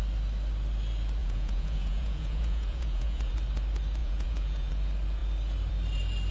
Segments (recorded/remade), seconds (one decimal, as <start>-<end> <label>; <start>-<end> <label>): 0.0-1.2 recorded; 1.2-3.3 remade; 3.3-4.0 recorded; 4.0-4.7 remade; 4.7-6.3 recorded